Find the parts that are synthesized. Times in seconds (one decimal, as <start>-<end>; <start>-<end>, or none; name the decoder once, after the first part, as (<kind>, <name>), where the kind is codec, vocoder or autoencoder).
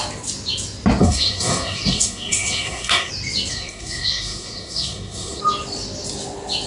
1.0-3.1 (codec, SNAC); 3.5-5.4